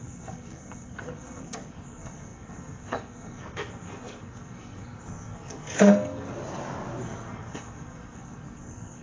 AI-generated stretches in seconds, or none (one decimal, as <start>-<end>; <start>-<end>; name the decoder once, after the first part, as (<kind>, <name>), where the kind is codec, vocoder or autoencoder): 0.0-6.3 (codec, SNAC); 7.0-9.0